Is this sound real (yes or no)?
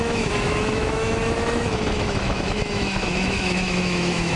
no